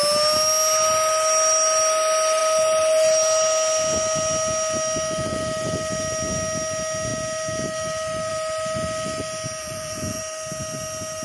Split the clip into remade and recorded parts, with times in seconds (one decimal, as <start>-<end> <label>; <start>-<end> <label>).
0.0-9.6 recorded; 9.6-10.2 remade; 10.2-11.2 recorded